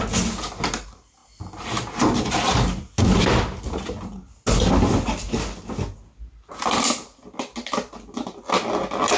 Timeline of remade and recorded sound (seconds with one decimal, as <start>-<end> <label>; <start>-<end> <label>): 0.0-9.2 recorded